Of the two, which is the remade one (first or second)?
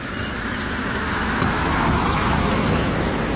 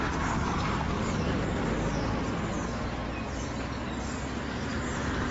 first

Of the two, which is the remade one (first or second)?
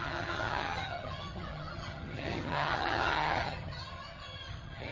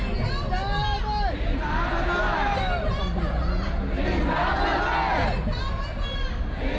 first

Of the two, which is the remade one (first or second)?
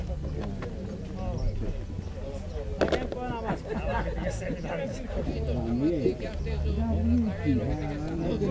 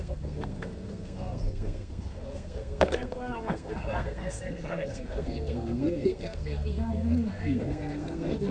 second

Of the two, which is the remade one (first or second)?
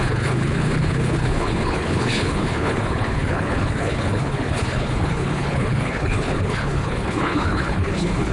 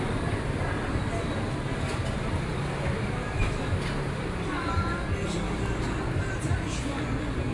first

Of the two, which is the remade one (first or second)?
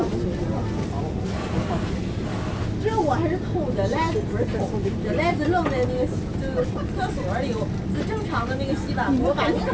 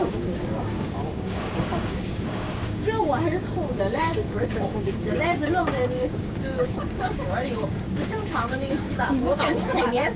second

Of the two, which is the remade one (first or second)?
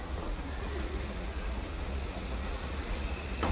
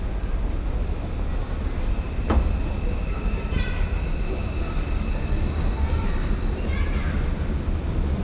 first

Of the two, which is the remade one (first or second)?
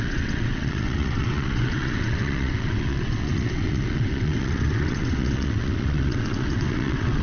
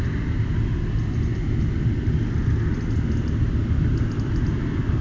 first